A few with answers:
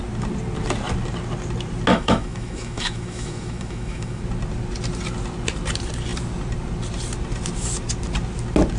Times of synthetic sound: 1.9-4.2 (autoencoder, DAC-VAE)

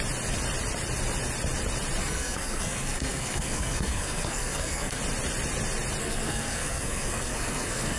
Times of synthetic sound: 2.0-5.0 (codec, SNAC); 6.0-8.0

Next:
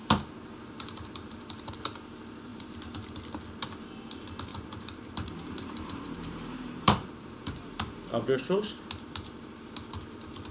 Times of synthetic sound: 0.0-1.7 (vocoder, BigVGAN v2); 4.5-9.6